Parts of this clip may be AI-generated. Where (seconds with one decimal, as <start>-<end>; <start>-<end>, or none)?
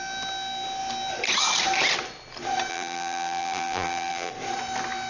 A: 2.7-4.3